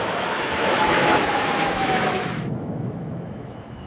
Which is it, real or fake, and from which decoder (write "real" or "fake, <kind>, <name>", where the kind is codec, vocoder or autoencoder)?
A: fake, autoencoder, DAC-VAE